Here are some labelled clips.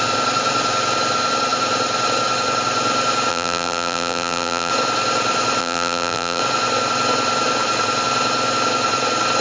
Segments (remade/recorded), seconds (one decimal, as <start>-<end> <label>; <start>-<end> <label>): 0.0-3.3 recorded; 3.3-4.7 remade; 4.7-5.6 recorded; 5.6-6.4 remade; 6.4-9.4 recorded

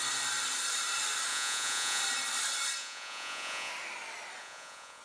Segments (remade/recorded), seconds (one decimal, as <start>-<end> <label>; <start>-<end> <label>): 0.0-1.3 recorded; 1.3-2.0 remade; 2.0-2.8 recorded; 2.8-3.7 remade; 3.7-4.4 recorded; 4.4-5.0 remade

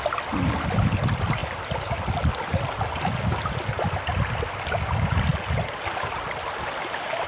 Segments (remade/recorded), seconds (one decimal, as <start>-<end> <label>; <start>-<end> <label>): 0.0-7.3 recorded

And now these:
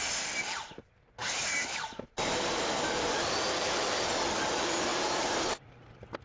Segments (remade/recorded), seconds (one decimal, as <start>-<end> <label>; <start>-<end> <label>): 0.0-1.2 recorded; 1.2-2.9 remade; 2.9-4.9 recorded; 4.9-5.6 remade; 5.6-6.2 recorded

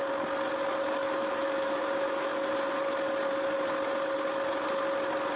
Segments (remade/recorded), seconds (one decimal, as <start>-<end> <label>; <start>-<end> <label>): 0.0-1.0 recorded; 1.0-2.5 remade; 2.5-5.4 recorded

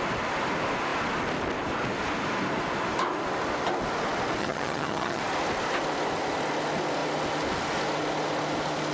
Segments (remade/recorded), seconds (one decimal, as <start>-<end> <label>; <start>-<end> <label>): 0.0-4.4 recorded; 4.4-5.2 remade; 5.2-8.9 recorded

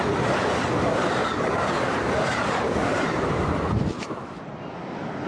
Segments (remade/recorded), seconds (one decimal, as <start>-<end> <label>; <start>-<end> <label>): 0.0-1.2 recorded; 1.2-4.4 remade; 4.4-5.3 recorded

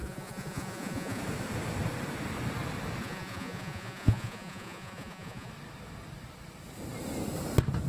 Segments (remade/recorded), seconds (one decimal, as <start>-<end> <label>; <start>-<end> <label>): 0.0-1.2 remade; 1.2-3.0 recorded; 3.0-5.5 remade; 5.5-7.9 recorded